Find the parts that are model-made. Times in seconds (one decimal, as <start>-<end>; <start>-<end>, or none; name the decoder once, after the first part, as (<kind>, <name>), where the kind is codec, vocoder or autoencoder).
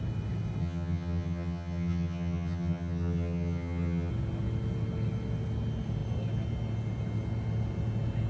0.6-4.1 (vocoder, HiFi-GAN)